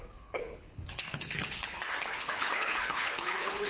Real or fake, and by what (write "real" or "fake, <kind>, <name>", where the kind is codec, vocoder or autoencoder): fake, codec, HILCodec